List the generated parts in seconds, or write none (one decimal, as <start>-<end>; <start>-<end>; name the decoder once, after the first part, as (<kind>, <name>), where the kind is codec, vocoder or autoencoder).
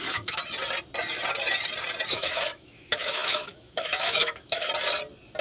0.0-0.4 (autoencoder, DAC-VAE); 2.1-4.7